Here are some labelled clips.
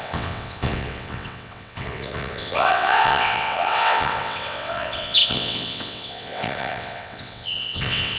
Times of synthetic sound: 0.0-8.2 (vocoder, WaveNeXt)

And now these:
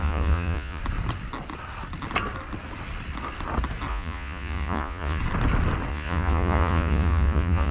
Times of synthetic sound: 0.0-0.8 (vocoder, Vocos); 3.9-5.2; 5.9-7.7

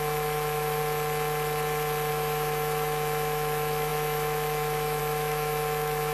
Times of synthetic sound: 0.0-0.8 (autoencoder, DAC-VAE); 2.1-6.1

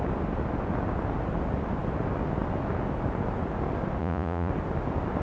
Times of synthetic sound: 4.0-4.5 (vocoder, Vocos)

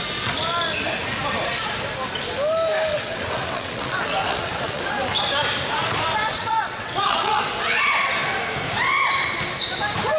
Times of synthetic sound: 2.9-4.8 (vocoder, WaveNeXt); 6.2-7.4

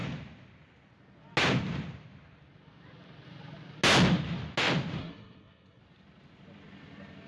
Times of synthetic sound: 5.0-5.8 (codec, SNAC)

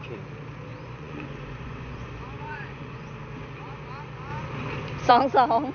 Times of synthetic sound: 0.7-3.1 (vocoder, Vocos)